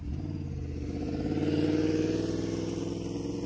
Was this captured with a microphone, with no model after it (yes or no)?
yes